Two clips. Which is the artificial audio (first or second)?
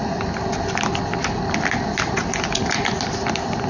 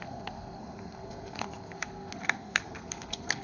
second